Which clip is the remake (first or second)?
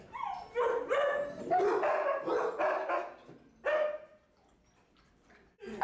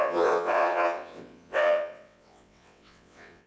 second